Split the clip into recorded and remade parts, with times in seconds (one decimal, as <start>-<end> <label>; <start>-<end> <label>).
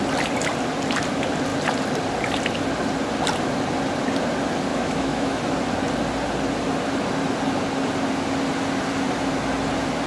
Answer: 0.0-4.7 recorded; 4.7-5.4 remade; 5.4-10.1 recorded